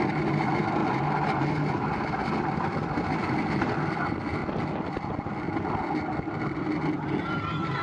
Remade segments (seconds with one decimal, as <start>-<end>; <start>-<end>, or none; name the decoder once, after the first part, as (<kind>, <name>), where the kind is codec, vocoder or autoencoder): 0.0-0.8 (vocoder, BigVGAN v2); 1.7-4.4; 5.7-7.8